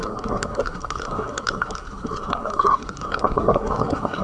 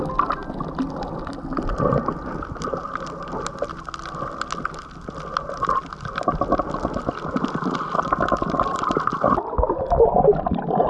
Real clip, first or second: second